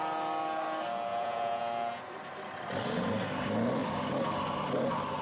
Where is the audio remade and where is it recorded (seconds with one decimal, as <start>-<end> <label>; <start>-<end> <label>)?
0.0-1.1 recorded; 1.1-1.6 remade; 1.6-5.2 recorded